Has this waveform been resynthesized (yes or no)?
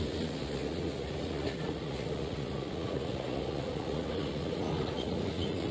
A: yes